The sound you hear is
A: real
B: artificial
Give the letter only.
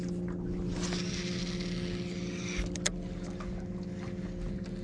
A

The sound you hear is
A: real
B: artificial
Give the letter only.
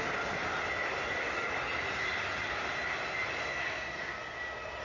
A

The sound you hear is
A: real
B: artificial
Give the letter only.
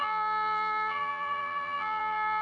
B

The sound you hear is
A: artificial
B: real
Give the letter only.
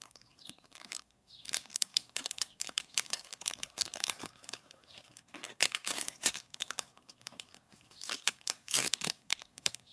A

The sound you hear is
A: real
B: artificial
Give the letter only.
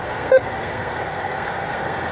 B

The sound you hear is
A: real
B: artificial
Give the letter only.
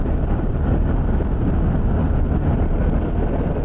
A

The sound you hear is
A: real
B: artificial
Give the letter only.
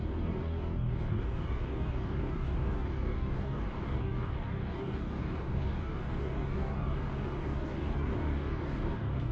B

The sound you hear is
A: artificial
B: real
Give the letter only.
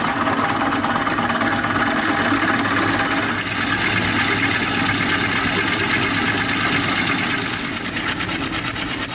B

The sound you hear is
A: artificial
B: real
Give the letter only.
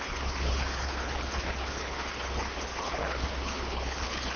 A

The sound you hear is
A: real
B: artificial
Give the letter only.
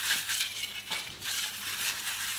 B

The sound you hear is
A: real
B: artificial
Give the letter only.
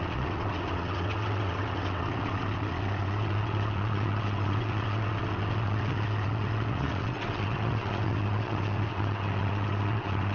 B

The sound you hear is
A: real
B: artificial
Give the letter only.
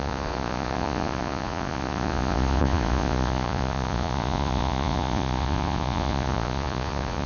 B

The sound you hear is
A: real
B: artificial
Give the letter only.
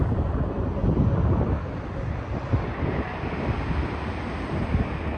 A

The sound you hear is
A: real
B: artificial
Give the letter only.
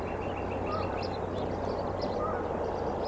A